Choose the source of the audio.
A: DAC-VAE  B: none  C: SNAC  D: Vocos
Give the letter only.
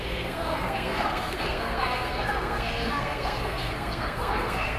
C